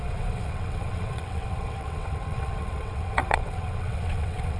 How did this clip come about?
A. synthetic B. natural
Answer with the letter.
A